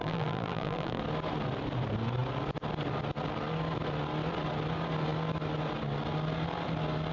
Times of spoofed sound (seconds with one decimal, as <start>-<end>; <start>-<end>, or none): 0.0-1.0